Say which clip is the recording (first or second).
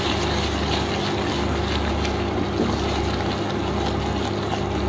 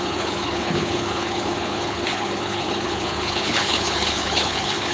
first